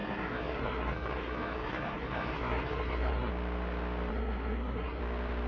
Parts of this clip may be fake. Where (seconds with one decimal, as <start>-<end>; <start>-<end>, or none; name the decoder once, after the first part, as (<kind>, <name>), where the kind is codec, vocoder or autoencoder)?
0.0-3.3 (codec, SNAC); 4.1-5.0